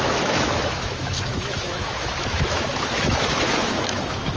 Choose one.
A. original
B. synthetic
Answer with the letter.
B